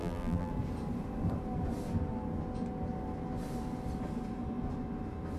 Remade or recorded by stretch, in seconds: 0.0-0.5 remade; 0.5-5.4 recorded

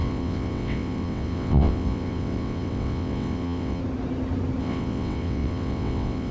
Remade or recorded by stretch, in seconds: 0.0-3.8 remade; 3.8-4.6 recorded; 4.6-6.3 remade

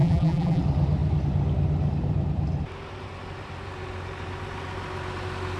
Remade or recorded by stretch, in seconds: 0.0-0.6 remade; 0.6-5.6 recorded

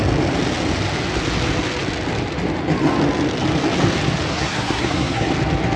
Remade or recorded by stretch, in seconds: 0.0-4.3 recorded; 4.3-5.3 remade; 5.3-5.8 recorded